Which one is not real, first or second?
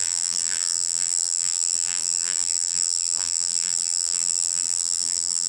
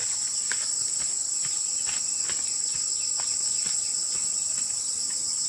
first